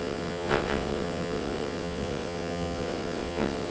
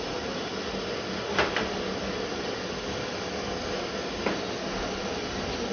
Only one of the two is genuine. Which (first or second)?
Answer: second